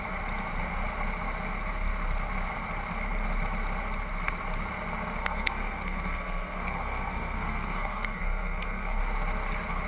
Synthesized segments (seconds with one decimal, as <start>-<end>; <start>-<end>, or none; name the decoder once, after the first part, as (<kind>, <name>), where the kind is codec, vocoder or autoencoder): 5.2-9.0 (codec, SNAC)